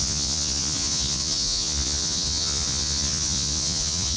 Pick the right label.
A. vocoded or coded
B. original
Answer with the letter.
A